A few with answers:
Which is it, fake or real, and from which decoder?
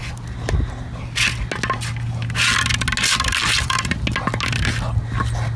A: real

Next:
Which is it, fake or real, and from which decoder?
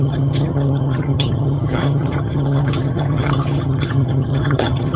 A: fake, vocoder, HiFi-GAN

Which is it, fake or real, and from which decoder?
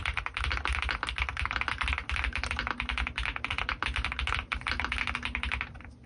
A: real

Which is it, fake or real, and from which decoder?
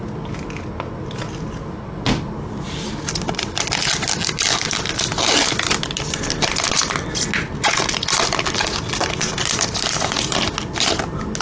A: real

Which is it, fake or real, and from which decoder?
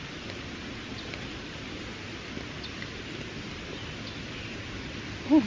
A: real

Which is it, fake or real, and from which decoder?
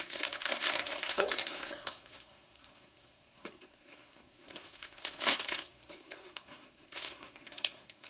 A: fake, codec, SNAC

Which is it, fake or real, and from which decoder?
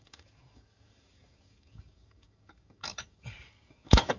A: fake, codec, DAC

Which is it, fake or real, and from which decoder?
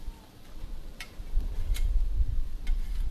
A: fake, vocoder, BigVGAN v2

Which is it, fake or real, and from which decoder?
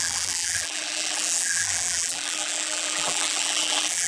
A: fake, vocoder, BigVGAN v2